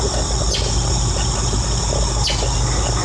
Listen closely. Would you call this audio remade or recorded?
recorded